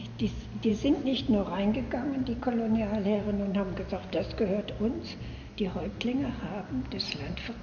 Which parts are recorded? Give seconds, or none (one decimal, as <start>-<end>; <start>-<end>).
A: 0.0-7.6